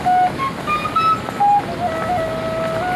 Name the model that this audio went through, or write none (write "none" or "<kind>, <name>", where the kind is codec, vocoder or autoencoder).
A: none